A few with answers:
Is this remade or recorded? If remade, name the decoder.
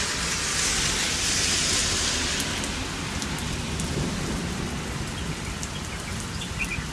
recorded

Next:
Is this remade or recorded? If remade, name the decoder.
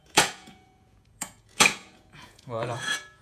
remade, vocoder, Vocos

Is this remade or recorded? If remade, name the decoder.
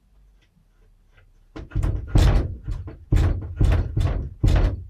recorded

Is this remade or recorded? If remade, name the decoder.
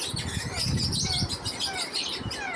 recorded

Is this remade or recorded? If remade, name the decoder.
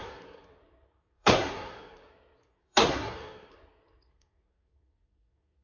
remade, codec, SNAC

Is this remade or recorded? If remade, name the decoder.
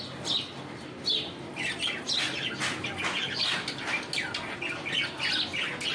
recorded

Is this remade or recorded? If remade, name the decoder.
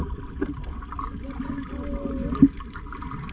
recorded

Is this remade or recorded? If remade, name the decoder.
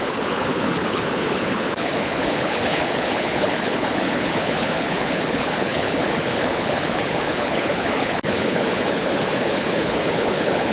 remade, codec, HILCodec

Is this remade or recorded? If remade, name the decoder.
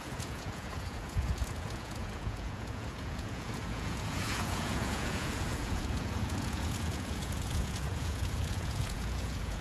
remade, vocoder, Vocos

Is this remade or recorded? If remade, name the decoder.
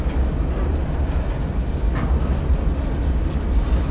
recorded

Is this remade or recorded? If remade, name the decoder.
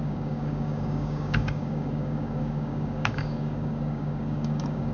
remade, codec, DAC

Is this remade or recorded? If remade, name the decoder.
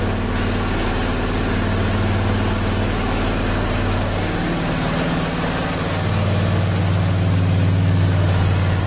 recorded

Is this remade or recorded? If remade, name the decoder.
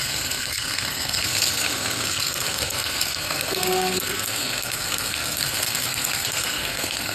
remade, codec, SNAC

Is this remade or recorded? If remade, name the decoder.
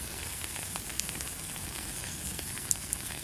remade, codec, SNAC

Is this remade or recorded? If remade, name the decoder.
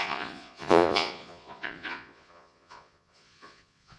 remade, vocoder, Vocos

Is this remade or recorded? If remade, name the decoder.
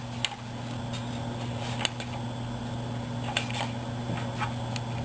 recorded